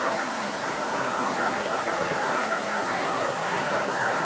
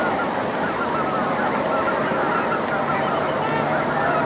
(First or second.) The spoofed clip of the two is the first